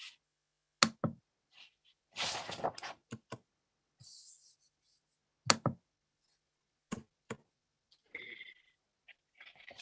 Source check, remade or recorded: recorded